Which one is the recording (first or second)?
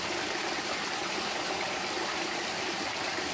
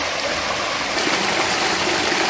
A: second